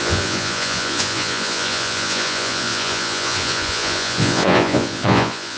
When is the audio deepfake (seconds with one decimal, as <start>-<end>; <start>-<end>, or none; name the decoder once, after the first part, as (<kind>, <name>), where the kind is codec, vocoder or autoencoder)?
0.0-5.6 (vocoder, Vocos)